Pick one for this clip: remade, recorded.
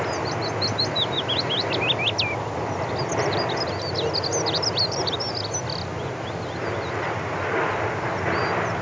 recorded